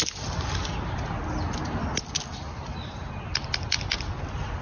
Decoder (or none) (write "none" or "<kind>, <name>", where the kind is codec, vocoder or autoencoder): none